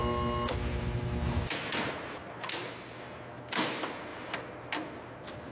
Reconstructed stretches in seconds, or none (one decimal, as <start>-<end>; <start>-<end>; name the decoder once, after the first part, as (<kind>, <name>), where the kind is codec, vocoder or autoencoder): none